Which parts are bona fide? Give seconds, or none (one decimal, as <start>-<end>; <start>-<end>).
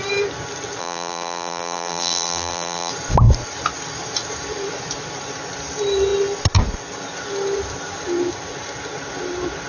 0.0-0.8; 2.9-9.7